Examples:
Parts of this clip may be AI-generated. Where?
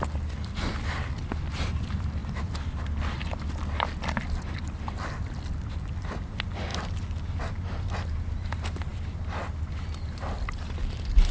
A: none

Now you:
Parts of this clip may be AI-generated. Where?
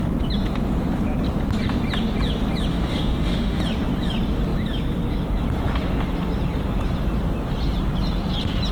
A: 2.7-3.6 (autoencoder, DAC-VAE)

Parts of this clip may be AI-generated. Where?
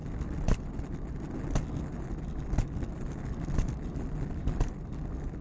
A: none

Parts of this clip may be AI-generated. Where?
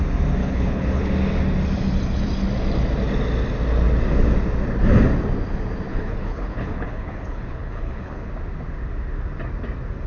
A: 0.4-1.1 (codec, HILCodec); 5.9-8.3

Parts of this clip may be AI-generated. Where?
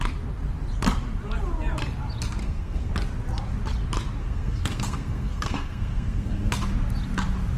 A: 2.4-2.9 (codec, SNAC); 4.2-6.5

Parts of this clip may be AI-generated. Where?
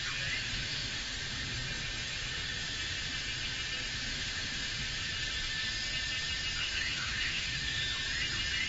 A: 0.5-1.1 (autoencoder, DAC-VAE); 4.1-4.8; 6.6-7.8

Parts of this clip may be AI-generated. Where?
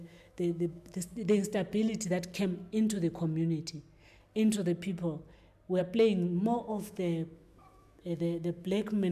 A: 0.0-1.1 (autoencoder, DAC-VAE); 5.8-9.1